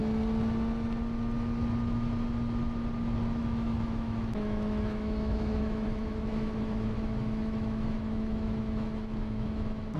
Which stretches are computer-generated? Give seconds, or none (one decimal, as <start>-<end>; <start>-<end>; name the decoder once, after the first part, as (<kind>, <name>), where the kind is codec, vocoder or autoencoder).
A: 3.4-10.0 (autoencoder, DAC-VAE)